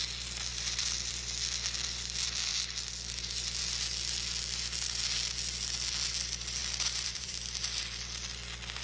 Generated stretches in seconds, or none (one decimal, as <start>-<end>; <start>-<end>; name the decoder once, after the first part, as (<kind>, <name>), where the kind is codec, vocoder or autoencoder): 0.5-1.1 (vocoder, BigVGAN v2); 6.6-7.8